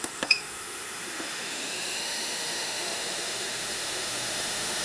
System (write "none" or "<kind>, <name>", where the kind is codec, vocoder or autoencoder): autoencoder, DAC-VAE